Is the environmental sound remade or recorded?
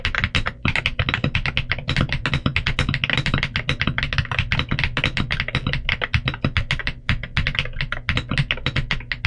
recorded